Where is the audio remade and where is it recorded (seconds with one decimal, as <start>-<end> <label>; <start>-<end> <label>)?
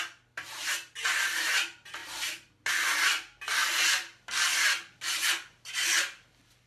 0.0-6.7 recorded